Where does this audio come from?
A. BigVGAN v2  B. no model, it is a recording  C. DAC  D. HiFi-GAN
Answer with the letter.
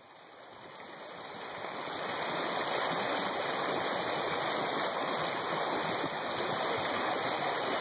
B